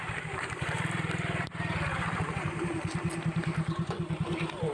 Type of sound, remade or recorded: remade